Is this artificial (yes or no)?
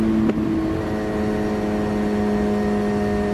no